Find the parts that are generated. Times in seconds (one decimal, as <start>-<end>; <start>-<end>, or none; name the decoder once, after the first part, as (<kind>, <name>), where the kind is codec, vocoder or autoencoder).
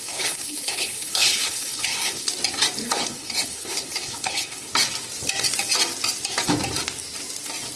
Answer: 0.0-2.3 (codec, HILCodec); 2.8-4.7